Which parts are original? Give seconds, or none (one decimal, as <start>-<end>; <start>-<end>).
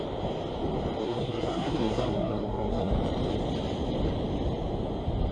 0.0-1.0; 2.9-5.3